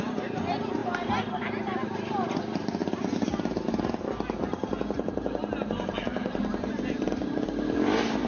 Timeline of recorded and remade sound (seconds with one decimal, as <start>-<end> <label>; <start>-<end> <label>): 0.0-8.3 recorded